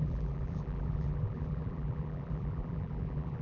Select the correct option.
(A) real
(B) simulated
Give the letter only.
B